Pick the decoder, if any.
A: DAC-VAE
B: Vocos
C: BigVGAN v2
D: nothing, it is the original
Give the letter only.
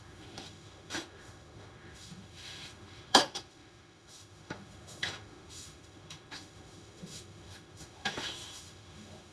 A